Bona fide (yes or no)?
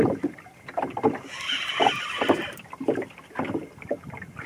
yes